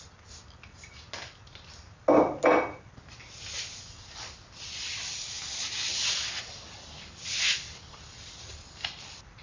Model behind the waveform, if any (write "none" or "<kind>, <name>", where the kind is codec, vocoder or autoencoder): none